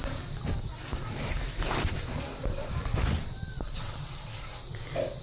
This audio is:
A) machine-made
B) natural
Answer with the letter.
B